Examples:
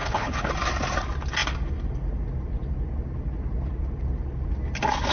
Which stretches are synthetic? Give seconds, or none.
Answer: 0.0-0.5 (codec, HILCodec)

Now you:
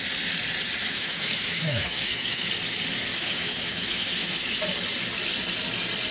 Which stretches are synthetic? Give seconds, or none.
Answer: 0.8-2.5 (autoencoder, DAC-VAE); 3.1-4.6